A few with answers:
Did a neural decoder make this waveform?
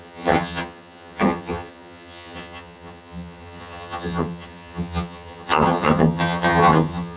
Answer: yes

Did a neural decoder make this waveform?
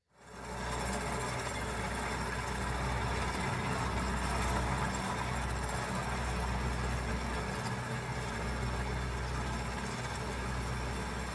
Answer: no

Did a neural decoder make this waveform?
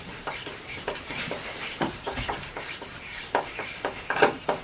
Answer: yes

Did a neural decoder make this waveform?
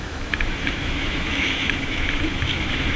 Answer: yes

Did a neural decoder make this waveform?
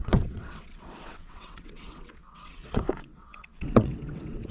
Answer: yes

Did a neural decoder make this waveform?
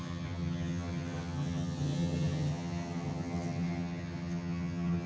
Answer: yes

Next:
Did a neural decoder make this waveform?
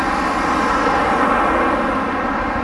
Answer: no